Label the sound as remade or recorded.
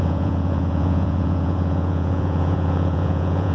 remade